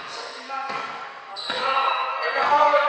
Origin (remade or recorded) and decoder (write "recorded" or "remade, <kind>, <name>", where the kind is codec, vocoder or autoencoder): remade, codec, SNAC